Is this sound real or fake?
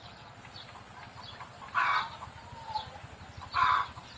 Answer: real